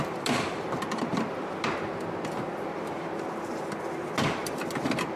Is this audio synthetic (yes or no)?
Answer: no